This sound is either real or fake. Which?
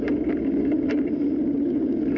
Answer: real